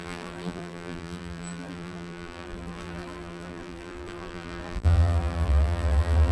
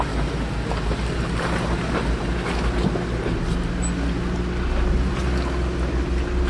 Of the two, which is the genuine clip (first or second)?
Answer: second